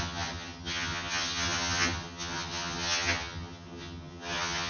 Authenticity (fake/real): fake